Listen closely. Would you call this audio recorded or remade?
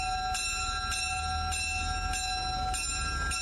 recorded